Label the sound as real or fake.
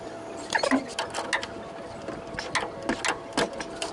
real